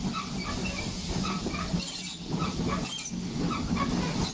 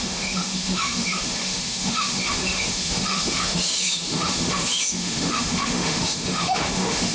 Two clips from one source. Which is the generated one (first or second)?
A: second